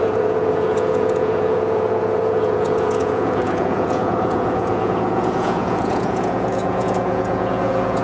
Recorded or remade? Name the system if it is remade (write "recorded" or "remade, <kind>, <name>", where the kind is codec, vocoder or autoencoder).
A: remade, vocoder, Vocos